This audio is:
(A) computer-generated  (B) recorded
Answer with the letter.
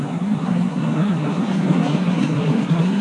A